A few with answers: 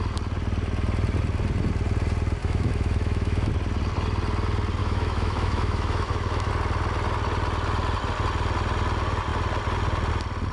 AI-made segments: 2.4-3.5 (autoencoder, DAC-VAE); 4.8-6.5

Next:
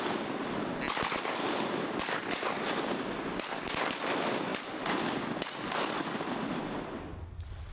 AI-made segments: none

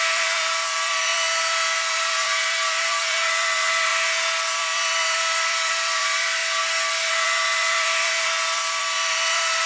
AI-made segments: 0.0-3.9 (vocoder, BigVGAN v2); 4.5-6.4; 7.1-9.7

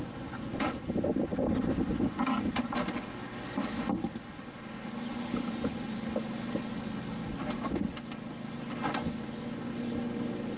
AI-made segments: none

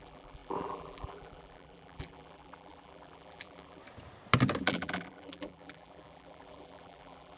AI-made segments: 0.0-3.8 (vocoder, BigVGAN v2); 4.6-7.4

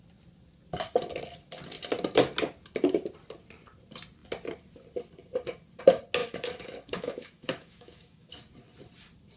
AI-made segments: 6.2-8.3 (autoencoder, DAC-VAE)

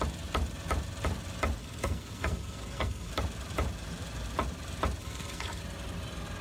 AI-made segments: 1.6-3.1 (codec, SNAC); 5.0-5.6

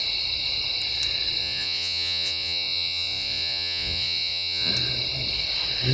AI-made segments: 1.4-4.7 (vocoder, Vocos)